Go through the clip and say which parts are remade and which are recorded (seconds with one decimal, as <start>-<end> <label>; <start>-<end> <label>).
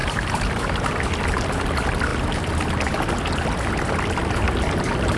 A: 0.0-0.9 remade; 0.9-5.2 recorded